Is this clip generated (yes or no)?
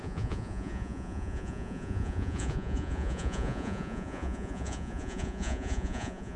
yes